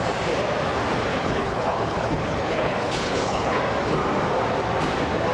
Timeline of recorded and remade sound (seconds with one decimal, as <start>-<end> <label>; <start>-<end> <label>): 0.0-1.1 recorded; 1.1-3.6 remade; 3.6-5.3 recorded